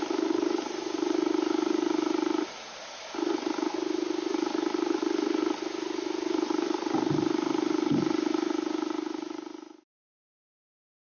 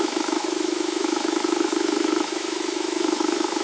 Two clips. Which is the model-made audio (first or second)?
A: second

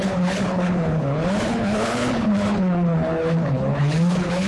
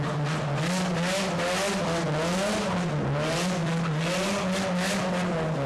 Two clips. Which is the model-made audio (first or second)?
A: first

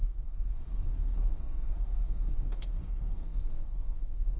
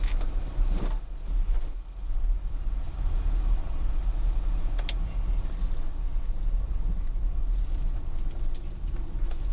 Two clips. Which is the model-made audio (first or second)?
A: first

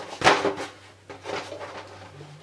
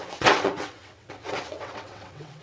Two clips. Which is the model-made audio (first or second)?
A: second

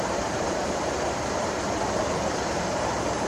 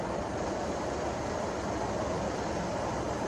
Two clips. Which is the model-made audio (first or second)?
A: first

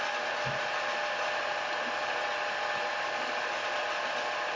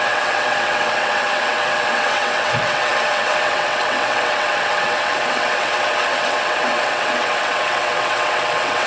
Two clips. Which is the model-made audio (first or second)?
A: second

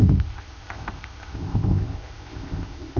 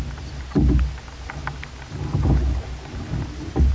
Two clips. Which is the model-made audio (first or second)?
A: first